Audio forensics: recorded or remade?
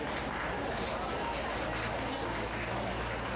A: recorded